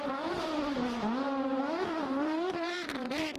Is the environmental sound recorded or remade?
remade